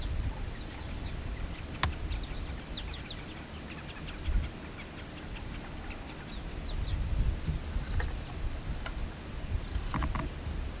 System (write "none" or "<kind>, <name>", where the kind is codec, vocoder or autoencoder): none